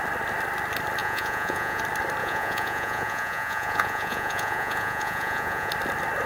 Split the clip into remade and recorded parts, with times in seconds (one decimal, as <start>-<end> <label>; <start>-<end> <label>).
0.0-1.0 recorded; 1.0-1.8 remade; 1.8-2.2 recorded; 2.2-5.7 remade; 5.7-6.3 recorded